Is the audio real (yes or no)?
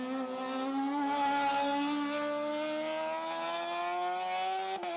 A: yes